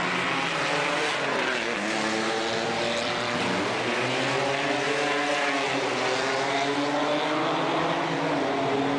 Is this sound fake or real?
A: real